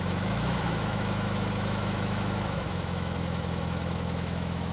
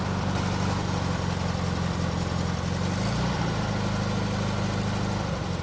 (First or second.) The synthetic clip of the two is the first